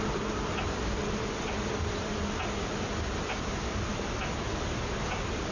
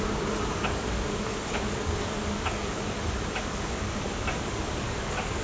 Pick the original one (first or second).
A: first